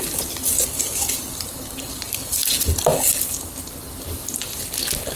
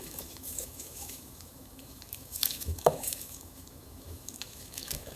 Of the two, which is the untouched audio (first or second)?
first